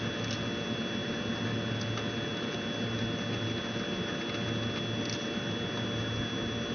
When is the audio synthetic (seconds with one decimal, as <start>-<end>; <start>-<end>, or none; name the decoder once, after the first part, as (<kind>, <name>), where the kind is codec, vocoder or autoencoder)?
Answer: none